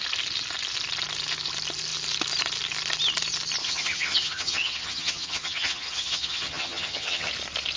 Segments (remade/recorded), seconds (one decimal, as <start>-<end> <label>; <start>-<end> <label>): 0.0-3.6 recorded; 3.6-7.3 remade; 7.3-7.8 recorded